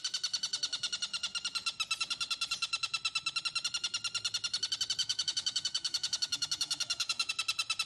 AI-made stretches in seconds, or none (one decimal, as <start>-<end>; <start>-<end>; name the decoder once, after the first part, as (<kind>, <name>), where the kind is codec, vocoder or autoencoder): 5.0-7.3 (autoencoder, DAC-VAE)